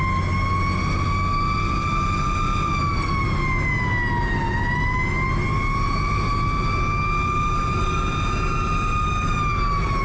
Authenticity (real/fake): real